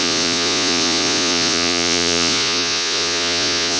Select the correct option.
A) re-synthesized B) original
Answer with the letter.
A